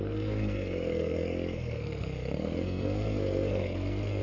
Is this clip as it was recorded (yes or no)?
no